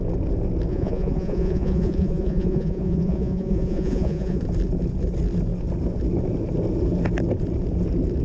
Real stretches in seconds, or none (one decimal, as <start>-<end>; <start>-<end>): 0.0-0.7; 4.4-8.2